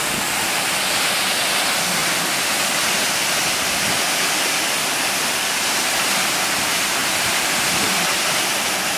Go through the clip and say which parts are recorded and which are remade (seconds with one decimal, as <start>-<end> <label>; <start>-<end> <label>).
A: 0.0-2.0 recorded; 2.0-4.2 remade; 4.2-7.0 recorded; 7.0-7.6 remade; 7.6-9.0 recorded